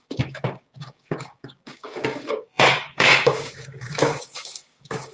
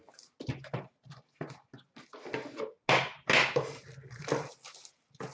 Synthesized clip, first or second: first